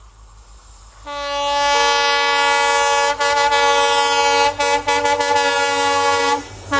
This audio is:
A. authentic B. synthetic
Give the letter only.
A